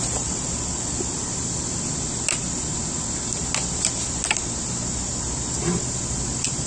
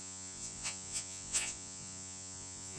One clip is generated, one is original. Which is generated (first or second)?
second